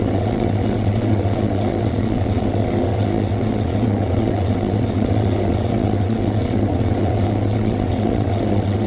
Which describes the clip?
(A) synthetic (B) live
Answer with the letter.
A